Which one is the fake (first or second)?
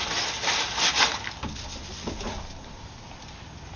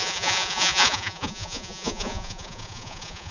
second